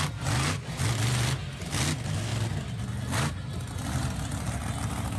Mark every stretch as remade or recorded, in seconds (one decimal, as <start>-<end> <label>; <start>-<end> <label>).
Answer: 0.0-5.2 recorded